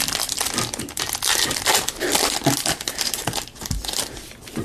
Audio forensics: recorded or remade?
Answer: recorded